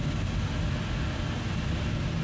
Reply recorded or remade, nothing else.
recorded